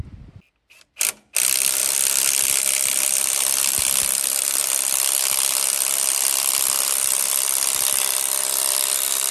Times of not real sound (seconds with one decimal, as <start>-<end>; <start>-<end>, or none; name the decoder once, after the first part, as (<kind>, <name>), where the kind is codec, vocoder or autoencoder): none